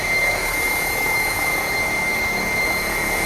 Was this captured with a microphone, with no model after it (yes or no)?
no